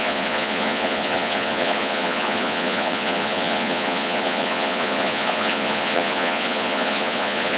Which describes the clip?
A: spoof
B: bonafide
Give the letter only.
A